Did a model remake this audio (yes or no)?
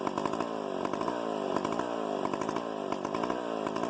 no